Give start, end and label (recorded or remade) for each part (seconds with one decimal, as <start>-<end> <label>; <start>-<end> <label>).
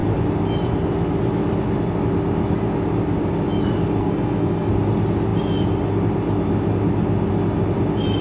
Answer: 0.0-4.0 recorded; 4.0-4.7 remade; 4.7-8.2 recorded